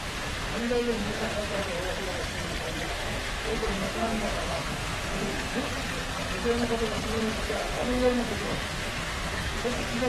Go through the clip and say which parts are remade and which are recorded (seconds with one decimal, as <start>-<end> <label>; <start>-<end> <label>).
0.0-1.6 remade; 1.6-2.9 recorded; 2.9-5.7 remade; 5.7-7.2 recorded; 7.2-10.1 remade